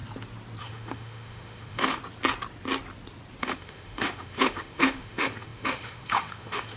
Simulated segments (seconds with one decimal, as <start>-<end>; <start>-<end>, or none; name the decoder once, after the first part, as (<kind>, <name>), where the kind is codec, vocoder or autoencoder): 0.6-2.0 (autoencoder, DAC-VAE); 3.4-6.8